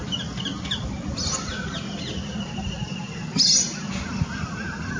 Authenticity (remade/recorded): recorded